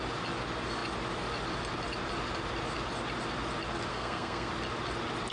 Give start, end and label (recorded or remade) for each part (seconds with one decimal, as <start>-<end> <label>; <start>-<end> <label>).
0.0-3.9 recorded; 3.9-4.5 remade; 4.5-5.3 recorded